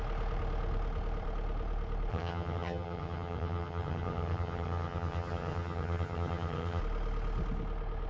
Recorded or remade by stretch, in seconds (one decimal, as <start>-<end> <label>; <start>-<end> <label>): 0.0-2.1 recorded; 2.1-6.8 remade; 6.8-8.1 recorded